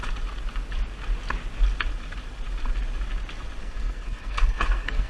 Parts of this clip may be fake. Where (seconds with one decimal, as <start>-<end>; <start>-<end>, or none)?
3.6-5.1